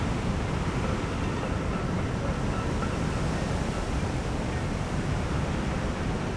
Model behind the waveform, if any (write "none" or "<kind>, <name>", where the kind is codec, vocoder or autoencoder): none